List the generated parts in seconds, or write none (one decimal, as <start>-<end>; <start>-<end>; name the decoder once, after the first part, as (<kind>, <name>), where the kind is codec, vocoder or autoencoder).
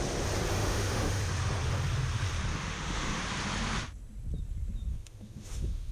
0.5-1.2 (autoencoder, DAC-VAE); 2.5-3.2; 4.9-5.9